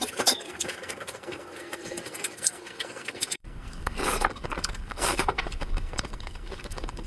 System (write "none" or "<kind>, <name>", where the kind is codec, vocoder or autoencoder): codec, SNAC